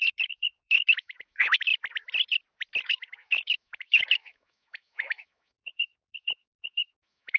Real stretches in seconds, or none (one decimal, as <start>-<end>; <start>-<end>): 1.7-2.8